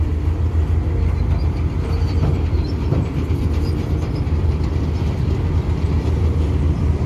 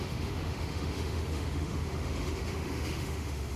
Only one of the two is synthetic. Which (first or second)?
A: second